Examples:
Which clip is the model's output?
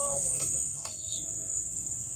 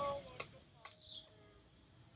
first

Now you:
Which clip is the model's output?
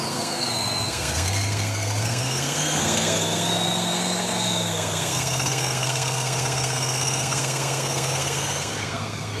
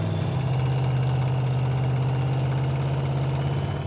first